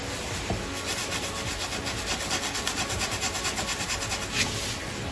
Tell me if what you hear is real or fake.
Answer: real